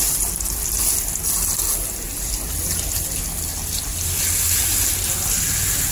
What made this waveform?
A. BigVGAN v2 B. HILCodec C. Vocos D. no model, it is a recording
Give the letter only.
D